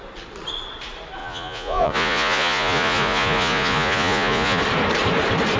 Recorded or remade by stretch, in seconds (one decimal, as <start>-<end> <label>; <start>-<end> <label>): 0.0-1.2 recorded; 1.2-4.6 remade; 4.6-5.6 recorded